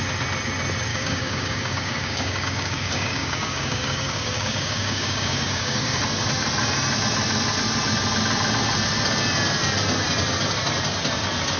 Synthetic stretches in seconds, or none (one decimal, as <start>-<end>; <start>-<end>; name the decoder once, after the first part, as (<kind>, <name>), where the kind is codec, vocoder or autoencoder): 0.9-6.0 (codec, DAC)